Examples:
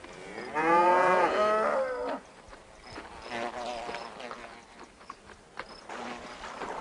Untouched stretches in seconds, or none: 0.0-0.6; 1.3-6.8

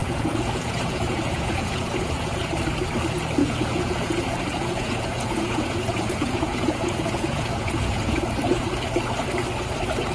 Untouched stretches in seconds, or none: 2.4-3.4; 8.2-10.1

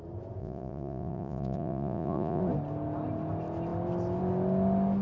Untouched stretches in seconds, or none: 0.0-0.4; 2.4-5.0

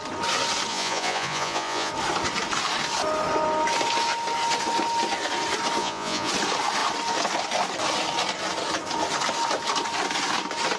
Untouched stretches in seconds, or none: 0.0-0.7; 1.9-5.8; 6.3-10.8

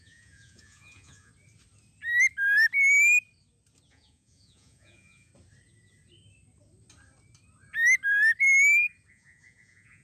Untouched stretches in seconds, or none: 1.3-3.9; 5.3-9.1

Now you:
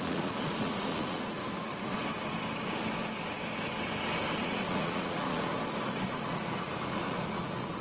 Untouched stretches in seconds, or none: 1.4-4.4; 5.5-6.1

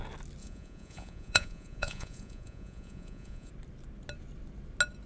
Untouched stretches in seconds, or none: 0.0-0.4; 3.5-5.1

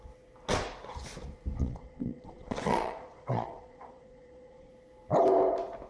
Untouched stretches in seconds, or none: 0.0-1.6; 4.7-5.9